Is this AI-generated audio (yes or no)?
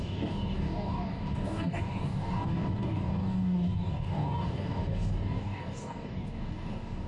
yes